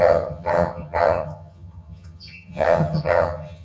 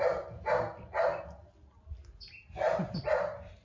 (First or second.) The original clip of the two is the second